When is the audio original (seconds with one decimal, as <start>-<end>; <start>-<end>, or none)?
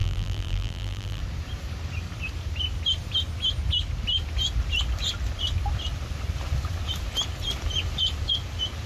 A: 1.2-8.9